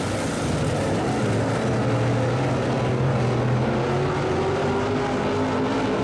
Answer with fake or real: real